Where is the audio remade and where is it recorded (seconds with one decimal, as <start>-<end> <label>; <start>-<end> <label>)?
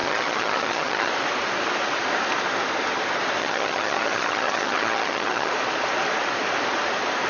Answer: 0.0-1.1 remade; 1.1-3.4 recorded; 3.4-5.5 remade; 5.5-7.3 recorded